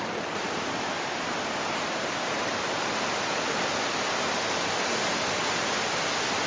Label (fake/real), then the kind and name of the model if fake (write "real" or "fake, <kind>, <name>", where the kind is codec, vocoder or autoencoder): real